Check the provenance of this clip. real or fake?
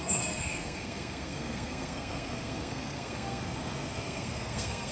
fake